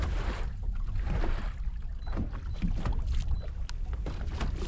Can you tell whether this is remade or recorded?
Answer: recorded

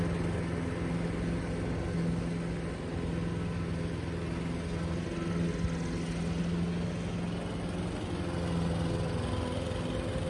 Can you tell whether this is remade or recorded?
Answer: recorded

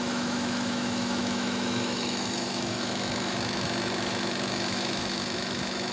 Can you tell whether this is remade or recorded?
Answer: remade